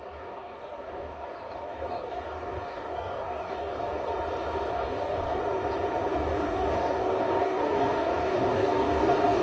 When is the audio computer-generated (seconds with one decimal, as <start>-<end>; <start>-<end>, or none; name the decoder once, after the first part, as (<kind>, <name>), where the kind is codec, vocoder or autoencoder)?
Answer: 0.0-4.1 (codec, DAC); 4.7-5.4; 6.1-9.4